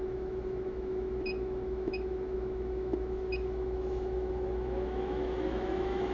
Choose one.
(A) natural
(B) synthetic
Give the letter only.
B